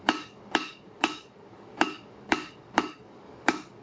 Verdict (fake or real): fake